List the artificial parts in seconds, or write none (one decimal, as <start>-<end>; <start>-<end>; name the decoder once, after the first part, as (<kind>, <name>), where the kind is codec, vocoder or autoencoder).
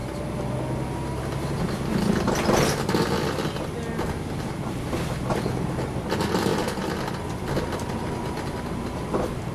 none